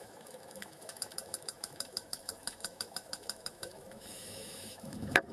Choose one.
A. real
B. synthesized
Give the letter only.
B